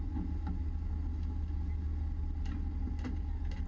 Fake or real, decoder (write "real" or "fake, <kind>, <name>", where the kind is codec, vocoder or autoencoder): real